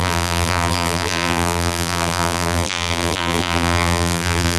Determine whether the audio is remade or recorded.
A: remade